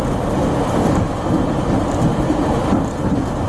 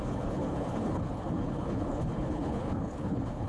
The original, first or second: first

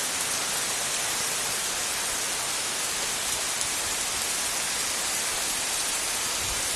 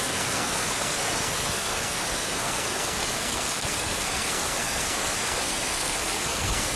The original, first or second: first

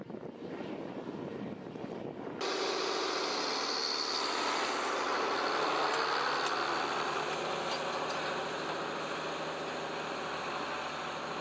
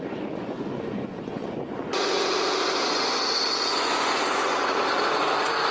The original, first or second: first